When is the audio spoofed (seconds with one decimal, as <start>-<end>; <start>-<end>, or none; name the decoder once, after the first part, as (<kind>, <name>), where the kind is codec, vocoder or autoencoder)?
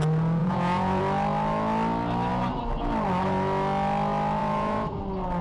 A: 0.4-1.0 (vocoder, Vocos); 4.4-5.0